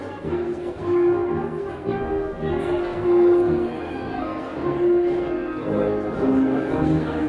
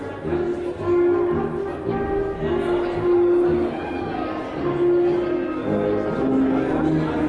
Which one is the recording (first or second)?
second